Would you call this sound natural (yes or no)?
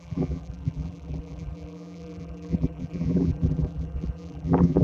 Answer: no